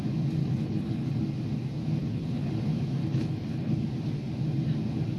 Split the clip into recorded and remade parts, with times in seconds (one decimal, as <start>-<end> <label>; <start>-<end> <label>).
0.0-0.4 recorded; 0.4-1.2 remade; 1.2-2.0 recorded; 2.0-2.5 remade; 2.5-3.0 recorded; 3.0-3.7 remade; 3.7-5.2 recorded